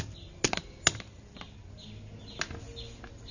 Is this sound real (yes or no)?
yes